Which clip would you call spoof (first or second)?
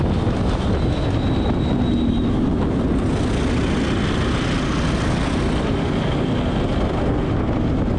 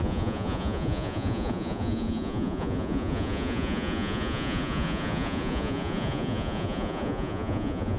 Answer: second